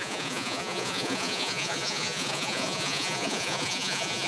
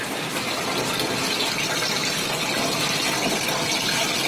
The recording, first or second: second